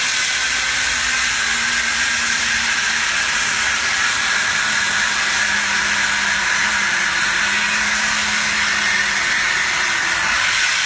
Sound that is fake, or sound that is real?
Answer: real